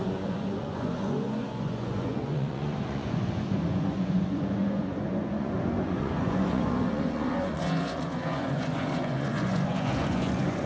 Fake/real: fake